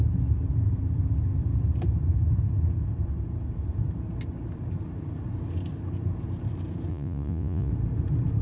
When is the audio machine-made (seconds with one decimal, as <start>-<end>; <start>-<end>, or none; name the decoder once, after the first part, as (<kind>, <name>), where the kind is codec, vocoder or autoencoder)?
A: 6.9-7.7 (vocoder, Vocos)